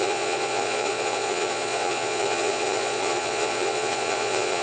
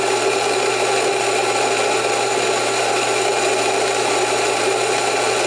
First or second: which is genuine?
second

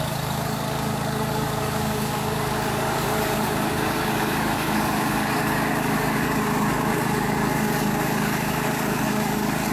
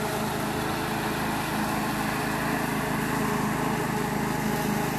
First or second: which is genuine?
second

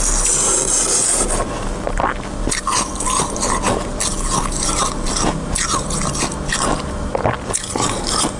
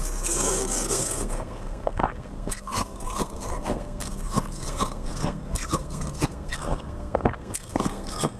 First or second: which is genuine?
first